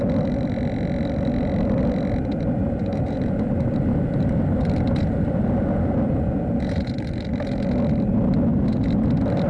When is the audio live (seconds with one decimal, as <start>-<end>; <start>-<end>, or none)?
0.0-2.6; 3.6-8.5